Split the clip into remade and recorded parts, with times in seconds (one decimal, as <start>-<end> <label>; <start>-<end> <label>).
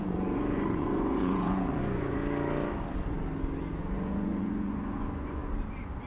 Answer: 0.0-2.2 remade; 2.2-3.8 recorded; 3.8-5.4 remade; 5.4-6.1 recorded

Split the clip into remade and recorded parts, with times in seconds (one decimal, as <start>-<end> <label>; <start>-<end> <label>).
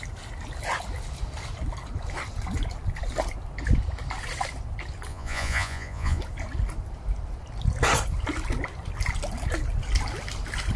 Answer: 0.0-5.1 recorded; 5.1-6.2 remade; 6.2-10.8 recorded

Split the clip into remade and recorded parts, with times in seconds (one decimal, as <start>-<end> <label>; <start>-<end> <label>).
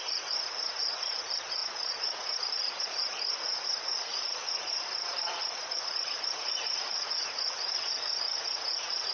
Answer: 0.0-9.1 remade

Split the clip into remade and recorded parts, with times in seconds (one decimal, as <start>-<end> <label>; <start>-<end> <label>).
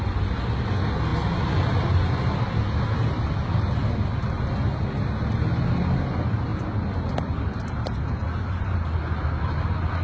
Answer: 0.0-10.0 recorded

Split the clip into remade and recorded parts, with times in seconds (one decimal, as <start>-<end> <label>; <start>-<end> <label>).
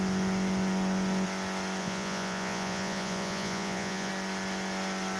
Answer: 0.0-1.8 recorded; 1.8-4.1 remade; 4.1-5.2 recorded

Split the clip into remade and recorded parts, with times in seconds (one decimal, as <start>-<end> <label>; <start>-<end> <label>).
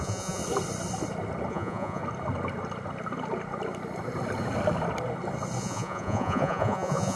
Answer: 0.0-0.4 remade; 0.4-1.5 recorded; 1.5-2.0 remade; 2.0-5.6 recorded; 5.6-7.2 remade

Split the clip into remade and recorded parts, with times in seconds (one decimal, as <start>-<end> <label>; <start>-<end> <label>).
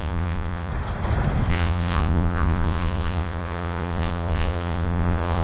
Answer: 0.0-0.7 remade; 0.7-1.5 recorded; 1.5-5.4 remade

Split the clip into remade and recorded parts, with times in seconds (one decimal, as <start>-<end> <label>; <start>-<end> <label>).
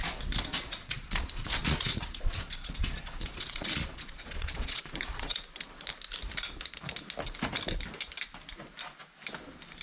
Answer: 0.0-0.5 recorded; 0.5-5.4 remade; 5.4-9.8 recorded